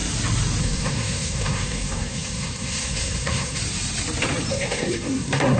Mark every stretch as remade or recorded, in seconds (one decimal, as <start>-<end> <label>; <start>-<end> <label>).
0.0-0.6 recorded; 0.6-3.6 remade; 3.6-4.5 recorded; 4.5-5.6 remade